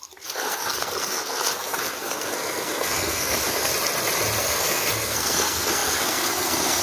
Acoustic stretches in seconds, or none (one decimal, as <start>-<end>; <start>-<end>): 3.7-4.4